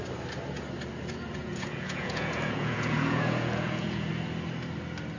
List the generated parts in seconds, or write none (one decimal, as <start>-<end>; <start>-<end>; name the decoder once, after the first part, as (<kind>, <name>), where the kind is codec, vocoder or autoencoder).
1.4-4.1 (vocoder, Vocos)